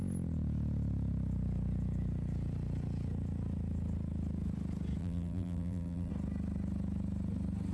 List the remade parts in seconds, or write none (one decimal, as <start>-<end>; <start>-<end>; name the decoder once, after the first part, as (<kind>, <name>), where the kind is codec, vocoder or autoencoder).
5.0-6.1 (vocoder, BigVGAN v2)